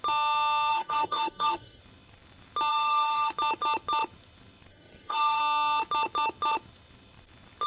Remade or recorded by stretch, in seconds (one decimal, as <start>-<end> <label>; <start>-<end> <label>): 0.0-0.7 recorded; 0.7-1.8 remade; 1.8-2.7 recorded; 2.7-3.3 remade; 3.3-4.7 recorded; 4.7-5.4 remade; 5.4-7.7 recorded